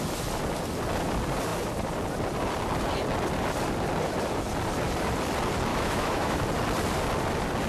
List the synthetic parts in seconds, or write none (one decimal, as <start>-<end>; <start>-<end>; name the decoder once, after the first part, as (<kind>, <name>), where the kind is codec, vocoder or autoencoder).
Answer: 5.7-6.4 (autoencoder, DAC-VAE)